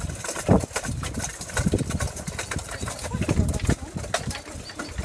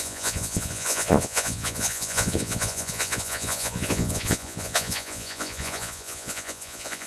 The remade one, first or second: second